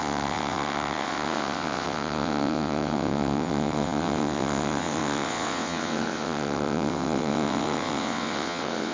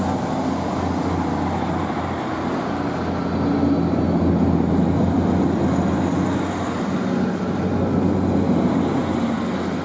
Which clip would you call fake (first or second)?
first